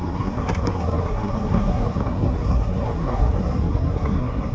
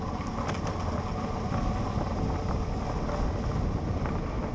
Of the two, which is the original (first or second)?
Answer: second